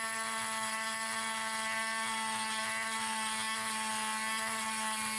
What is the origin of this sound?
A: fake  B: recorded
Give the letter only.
B